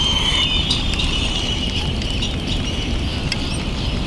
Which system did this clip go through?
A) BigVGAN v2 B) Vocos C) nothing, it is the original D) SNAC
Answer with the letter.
A